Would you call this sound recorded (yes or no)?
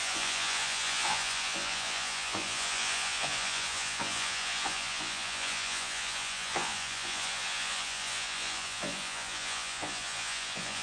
no